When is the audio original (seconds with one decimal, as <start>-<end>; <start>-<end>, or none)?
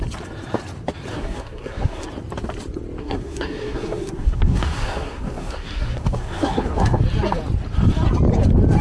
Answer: 0.0-1.1; 2.1-3.0; 7.0-8.8